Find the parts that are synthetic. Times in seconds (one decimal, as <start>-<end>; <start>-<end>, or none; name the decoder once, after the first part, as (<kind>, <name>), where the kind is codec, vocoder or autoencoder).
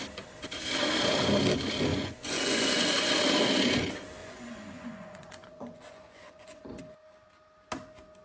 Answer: 1.9-3.1 (vocoder, Vocos); 4.2-6.8